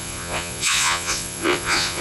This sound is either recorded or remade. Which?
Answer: remade